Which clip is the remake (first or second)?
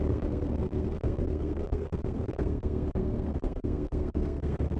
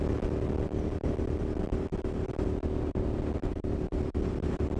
first